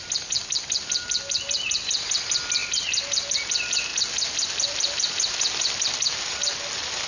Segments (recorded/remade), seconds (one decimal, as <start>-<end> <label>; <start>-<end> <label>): 0.0-2.6 recorded; 2.6-3.3 remade; 3.3-3.9 recorded; 3.9-6.6 remade; 6.6-7.1 recorded